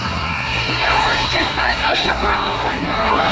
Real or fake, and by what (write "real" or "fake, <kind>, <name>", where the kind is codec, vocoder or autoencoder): fake, codec, SNAC